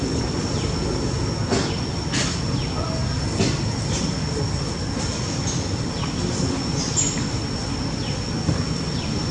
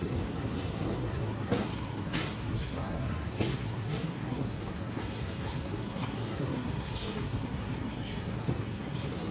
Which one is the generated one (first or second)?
second